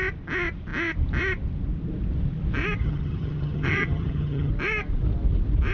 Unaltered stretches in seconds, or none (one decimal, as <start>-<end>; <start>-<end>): 0.0-2.8; 4.5-5.7